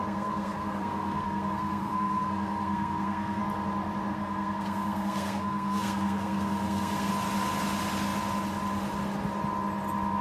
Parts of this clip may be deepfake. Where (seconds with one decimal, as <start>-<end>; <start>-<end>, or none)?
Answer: 0.0-3.4; 4.1-7.1